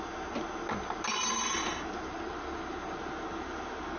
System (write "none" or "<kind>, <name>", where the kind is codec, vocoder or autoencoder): none